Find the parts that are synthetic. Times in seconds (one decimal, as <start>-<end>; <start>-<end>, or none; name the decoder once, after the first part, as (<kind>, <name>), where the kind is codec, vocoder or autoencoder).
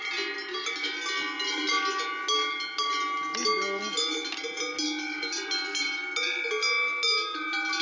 none